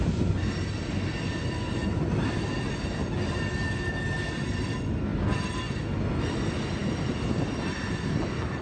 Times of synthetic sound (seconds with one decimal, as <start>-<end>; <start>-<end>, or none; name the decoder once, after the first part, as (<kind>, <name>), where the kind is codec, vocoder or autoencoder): none